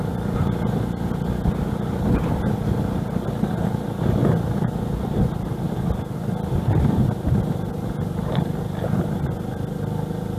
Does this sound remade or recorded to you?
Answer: recorded